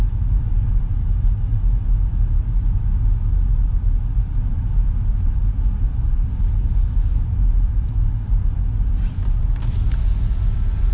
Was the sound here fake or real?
real